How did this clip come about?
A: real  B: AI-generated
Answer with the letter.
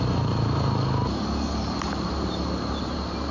A